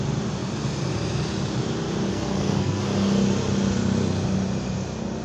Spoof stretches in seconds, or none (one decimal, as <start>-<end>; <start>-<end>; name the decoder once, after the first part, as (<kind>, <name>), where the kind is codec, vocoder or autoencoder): 2.1-2.8 (codec, SNAC)